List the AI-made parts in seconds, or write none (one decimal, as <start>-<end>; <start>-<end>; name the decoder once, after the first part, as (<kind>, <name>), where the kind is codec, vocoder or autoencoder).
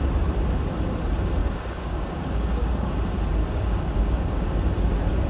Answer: 1.4-2.9 (codec, DAC); 3.4-4.5